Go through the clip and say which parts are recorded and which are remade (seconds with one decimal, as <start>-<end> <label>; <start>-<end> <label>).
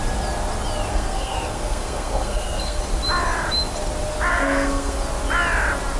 0.0-0.9 recorded; 0.9-2.8 remade; 2.8-4.3 recorded; 4.3-5.0 remade; 5.0-6.0 recorded